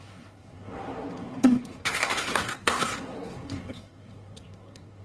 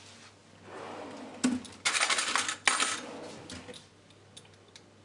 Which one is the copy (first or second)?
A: first